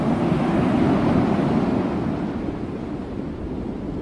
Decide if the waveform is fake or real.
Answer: real